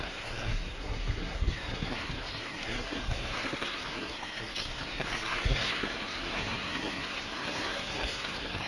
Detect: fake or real fake